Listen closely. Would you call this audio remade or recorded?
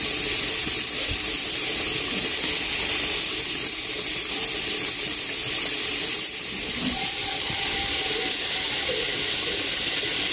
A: recorded